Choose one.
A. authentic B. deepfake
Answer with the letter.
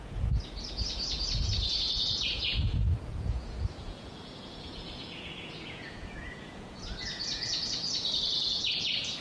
B